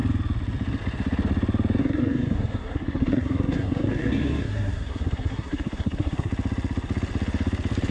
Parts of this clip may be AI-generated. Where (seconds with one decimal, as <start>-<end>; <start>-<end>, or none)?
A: 1.8-6.3